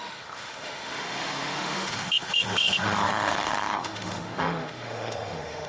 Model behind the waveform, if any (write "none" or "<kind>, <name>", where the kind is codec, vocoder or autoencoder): autoencoder, DAC-VAE